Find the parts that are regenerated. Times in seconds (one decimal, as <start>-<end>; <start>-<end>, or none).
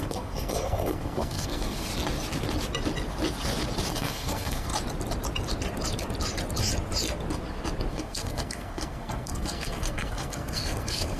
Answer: 0.0-1.9; 3.9-4.7; 7.9-11.2